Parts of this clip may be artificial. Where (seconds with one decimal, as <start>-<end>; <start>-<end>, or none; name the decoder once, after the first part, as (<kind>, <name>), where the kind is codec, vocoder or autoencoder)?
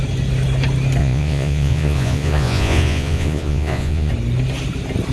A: 1.0-4.1 (vocoder, Vocos)